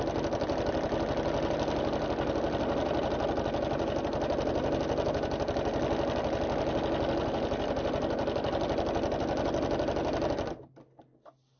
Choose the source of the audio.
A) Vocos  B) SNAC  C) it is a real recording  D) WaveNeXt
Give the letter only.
C